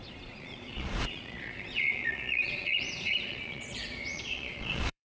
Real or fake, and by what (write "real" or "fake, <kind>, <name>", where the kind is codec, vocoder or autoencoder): fake, vocoder, Vocos